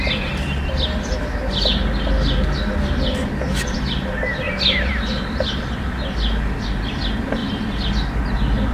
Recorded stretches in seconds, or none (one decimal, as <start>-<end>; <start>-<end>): 0.0-8.7